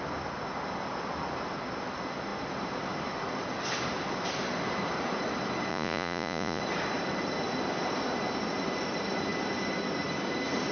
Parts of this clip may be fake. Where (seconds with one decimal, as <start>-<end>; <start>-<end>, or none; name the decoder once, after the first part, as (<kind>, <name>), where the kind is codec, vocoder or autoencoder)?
5.7-6.6 (vocoder, Vocos)